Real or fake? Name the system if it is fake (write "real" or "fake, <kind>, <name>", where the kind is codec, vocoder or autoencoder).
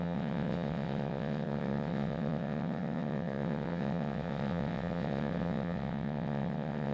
fake, vocoder, WaveNeXt